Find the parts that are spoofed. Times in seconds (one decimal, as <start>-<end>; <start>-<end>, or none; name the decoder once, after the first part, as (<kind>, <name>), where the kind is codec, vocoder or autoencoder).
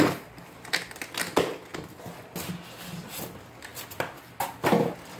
none